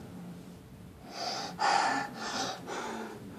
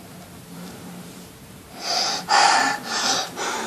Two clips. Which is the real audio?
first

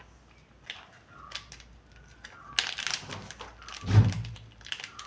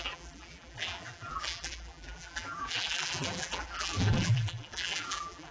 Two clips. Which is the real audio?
first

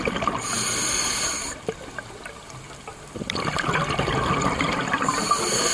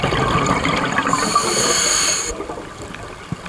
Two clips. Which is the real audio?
second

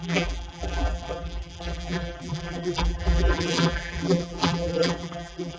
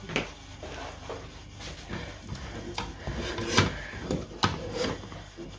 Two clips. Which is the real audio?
second